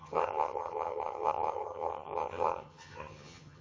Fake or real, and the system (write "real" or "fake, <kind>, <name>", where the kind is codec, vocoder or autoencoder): fake, vocoder, HiFi-GAN